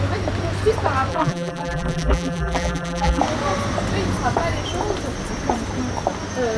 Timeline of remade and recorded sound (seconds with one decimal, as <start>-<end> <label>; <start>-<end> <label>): 0.0-1.1 recorded; 1.1-3.2 remade; 3.2-6.6 recorded

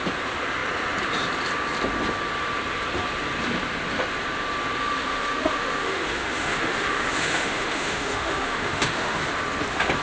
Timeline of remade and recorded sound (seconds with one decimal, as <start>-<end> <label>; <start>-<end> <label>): 0.0-4.8 recorded; 4.8-9.2 remade; 9.2-10.0 recorded